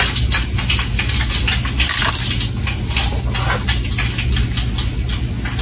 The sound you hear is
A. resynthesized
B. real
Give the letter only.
B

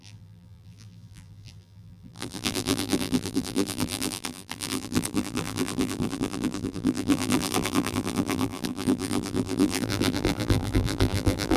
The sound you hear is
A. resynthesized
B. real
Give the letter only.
A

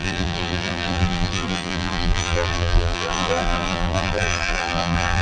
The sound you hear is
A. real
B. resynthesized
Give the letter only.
B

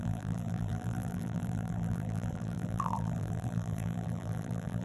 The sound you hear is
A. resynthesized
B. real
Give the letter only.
A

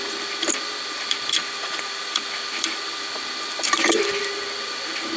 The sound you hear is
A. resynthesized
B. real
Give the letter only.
A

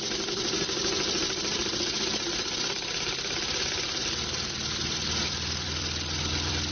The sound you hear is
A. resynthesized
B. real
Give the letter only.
A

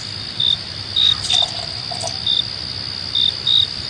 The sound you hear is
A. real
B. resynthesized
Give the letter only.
A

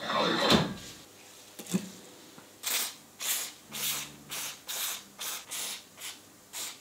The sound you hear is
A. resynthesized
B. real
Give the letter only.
B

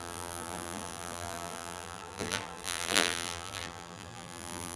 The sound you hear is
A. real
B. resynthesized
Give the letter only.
B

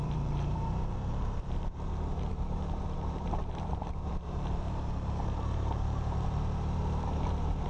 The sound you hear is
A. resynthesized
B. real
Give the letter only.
A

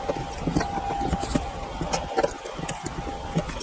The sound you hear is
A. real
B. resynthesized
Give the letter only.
A